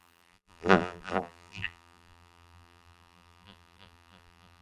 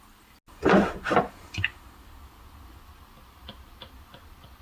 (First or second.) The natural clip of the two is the second